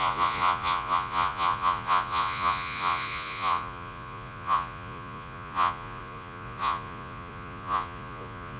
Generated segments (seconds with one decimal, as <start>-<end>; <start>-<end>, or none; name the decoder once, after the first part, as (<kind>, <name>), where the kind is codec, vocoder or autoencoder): 0.0-8.6 (vocoder, Vocos)